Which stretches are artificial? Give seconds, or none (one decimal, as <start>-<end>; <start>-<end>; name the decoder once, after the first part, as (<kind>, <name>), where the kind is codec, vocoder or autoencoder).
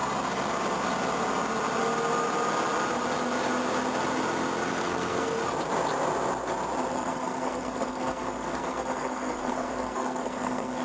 4.7-5.4 (codec, SNAC); 6.9-10.8